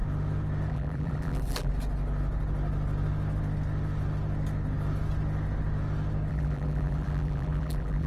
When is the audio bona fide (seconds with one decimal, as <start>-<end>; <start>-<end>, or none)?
0.0-0.7; 1.7-6.3

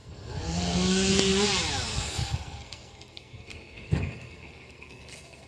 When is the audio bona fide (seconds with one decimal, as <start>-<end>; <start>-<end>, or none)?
1.1-1.9

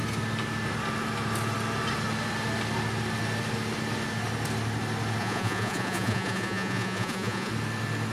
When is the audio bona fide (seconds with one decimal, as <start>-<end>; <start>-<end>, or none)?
0.0-5.2; 7.5-8.1

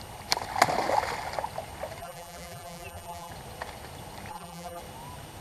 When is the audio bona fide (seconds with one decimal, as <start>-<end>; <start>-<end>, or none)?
0.0-2.0; 3.3-4.3; 4.8-5.4